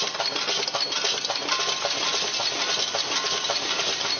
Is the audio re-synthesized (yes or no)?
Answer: yes